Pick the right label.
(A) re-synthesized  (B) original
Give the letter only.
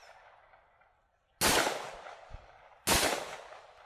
B